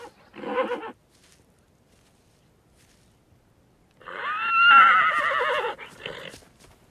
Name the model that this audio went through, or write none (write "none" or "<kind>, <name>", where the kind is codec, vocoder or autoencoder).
none